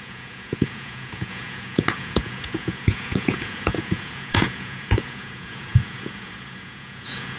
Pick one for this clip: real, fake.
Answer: fake